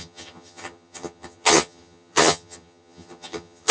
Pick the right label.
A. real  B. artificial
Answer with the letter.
B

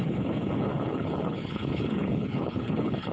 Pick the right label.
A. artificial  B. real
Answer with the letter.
A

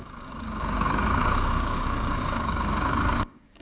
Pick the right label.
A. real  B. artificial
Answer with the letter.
B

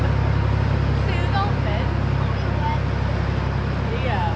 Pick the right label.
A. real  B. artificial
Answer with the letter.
A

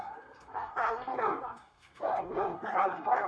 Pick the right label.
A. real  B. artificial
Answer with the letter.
B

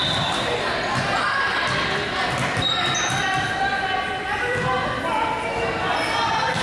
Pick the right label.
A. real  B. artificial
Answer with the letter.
A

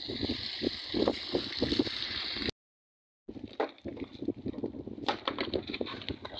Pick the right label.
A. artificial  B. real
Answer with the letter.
B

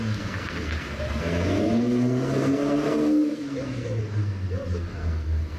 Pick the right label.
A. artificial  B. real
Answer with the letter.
A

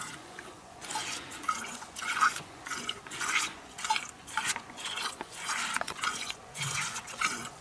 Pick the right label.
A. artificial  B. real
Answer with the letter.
A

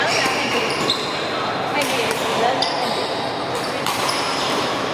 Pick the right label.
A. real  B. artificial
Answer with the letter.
B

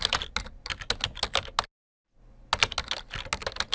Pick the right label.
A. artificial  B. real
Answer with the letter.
B